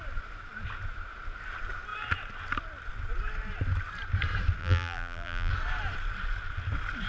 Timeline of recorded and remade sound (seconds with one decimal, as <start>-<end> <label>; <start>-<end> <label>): 0.0-4.6 recorded; 4.6-5.5 remade; 5.5-7.1 recorded